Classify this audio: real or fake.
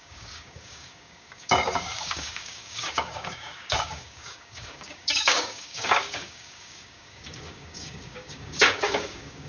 fake